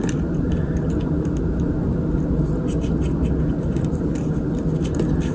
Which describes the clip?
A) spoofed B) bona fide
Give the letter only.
B